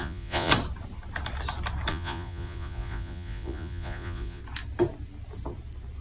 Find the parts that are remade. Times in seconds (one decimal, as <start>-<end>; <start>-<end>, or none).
0.0-0.5; 1.9-4.4